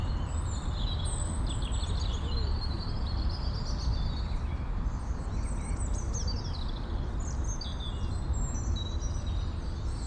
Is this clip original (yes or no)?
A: yes